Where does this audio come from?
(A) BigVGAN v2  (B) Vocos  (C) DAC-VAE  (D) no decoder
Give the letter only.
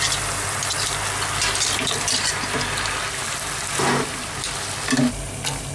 D